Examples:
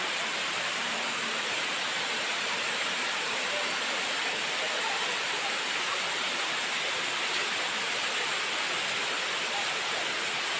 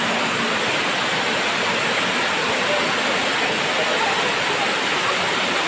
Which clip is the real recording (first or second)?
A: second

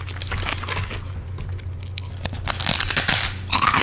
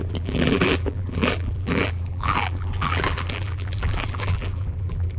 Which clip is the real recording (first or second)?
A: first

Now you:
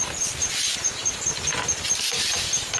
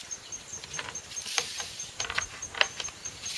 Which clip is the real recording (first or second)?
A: first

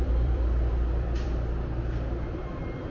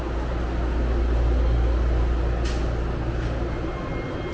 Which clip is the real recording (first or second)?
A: second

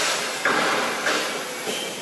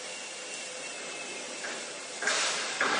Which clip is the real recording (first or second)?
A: first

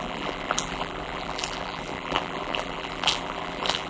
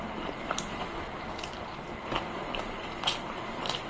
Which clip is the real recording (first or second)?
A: second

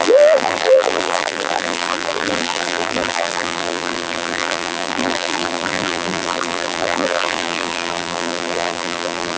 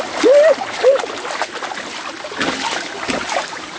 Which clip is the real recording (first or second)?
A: second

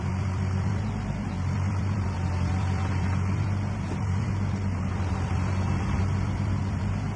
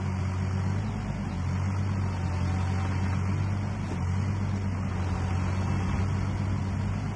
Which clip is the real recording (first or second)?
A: second